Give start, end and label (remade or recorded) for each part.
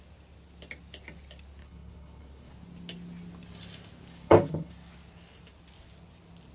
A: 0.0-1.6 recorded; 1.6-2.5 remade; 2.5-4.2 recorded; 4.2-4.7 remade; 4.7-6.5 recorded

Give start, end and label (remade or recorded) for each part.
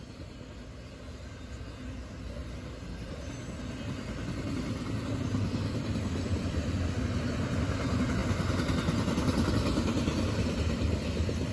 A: 0.0-2.4 recorded; 2.4-3.3 remade; 3.3-11.5 recorded